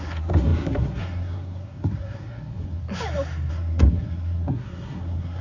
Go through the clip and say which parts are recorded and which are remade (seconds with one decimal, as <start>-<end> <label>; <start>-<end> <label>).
0.0-2.8 remade; 2.8-3.5 recorded; 3.5-5.4 remade